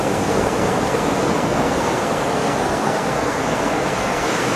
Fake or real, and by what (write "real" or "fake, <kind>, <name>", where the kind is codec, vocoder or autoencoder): fake, codec, SNAC